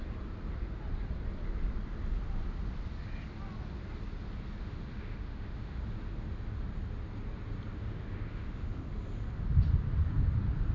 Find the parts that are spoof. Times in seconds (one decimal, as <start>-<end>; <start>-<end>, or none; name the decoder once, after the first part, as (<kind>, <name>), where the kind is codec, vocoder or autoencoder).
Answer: 4.6-5.8 (autoencoder, DAC-VAE); 7.7-8.9